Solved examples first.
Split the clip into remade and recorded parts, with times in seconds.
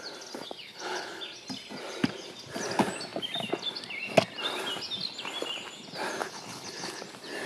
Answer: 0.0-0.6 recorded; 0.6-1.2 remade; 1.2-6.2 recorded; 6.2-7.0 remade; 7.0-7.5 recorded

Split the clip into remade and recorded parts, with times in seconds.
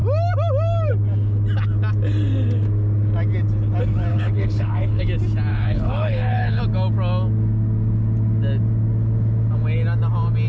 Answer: 0.0-4.1 recorded; 4.1-5.0 remade; 5.0-5.5 recorded; 5.5-6.6 remade; 6.6-10.5 recorded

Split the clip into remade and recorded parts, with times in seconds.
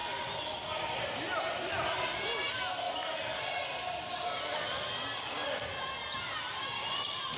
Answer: 0.0-7.4 recorded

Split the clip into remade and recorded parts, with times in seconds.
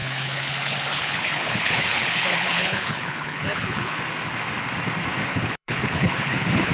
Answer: 0.0-4.0 remade; 4.0-5.3 recorded; 5.3-6.7 remade